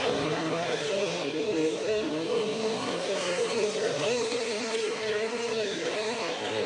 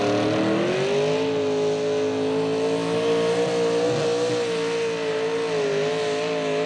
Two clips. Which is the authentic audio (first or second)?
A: second